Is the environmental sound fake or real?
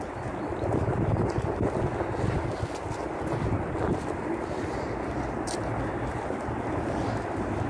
real